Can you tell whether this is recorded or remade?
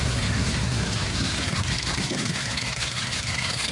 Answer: remade